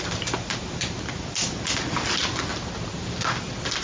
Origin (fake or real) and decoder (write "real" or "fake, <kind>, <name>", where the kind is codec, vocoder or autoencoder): real